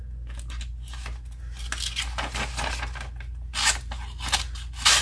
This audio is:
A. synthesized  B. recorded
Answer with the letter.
B